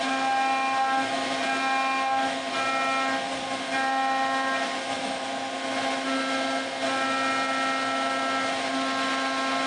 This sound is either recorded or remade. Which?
recorded